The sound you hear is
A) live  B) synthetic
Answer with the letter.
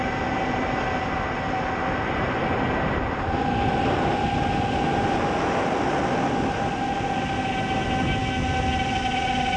A